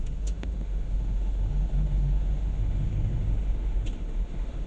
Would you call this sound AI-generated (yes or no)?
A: yes